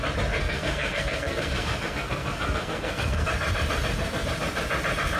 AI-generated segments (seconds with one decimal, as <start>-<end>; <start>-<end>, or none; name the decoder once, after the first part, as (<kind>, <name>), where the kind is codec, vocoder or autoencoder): 0.4-3.3 (codec, SNAC)